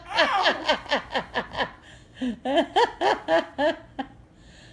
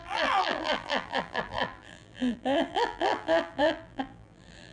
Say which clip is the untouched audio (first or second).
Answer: first